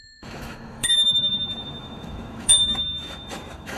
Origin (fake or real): fake